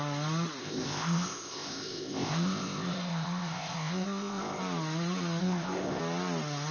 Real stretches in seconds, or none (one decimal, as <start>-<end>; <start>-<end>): 0.0-0.6; 4.6-5.4; 6.0-6.7